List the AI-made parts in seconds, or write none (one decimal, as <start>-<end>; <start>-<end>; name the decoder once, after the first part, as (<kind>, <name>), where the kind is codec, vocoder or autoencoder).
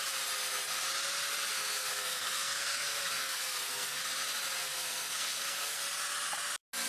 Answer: 1.5-4.0 (codec, SNAC); 4.6-5.8